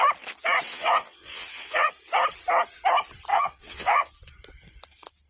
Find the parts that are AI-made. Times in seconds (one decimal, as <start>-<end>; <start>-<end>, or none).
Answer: 0.7-1.9; 3.3-4.1